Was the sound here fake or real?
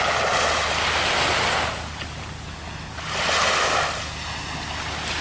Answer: real